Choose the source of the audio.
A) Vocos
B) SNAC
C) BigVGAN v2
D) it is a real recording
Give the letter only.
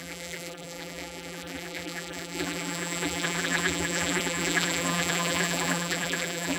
C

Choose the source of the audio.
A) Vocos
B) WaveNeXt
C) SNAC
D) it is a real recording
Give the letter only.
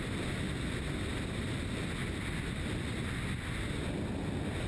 D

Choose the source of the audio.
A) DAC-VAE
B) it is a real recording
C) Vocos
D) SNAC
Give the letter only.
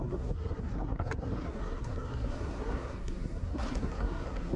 D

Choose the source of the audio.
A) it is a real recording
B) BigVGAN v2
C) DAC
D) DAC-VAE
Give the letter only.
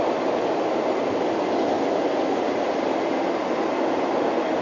A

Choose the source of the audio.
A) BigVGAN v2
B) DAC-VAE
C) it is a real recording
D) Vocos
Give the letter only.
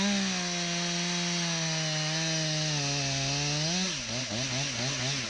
C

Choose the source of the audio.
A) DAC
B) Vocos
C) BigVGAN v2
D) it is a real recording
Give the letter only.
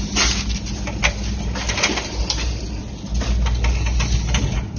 D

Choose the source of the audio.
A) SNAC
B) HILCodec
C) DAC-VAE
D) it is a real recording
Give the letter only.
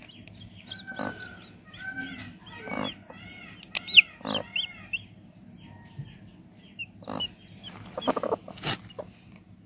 D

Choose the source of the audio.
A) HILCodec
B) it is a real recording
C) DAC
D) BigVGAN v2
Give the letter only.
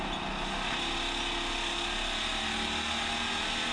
B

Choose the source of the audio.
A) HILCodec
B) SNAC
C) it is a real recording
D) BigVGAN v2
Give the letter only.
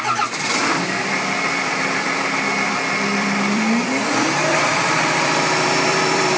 D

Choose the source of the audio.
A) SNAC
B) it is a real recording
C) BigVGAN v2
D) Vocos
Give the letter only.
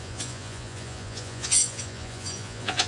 D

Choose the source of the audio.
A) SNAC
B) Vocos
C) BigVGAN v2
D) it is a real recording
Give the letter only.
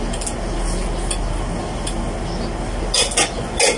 D